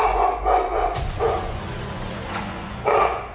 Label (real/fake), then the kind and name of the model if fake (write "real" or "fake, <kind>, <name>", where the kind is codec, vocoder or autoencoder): fake, vocoder, Vocos